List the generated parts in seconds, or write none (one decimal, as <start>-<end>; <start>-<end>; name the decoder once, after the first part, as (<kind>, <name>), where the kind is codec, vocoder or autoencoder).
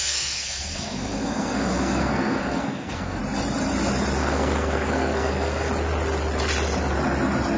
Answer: 0.0-3.2 (codec, SNAC); 4.2-5.7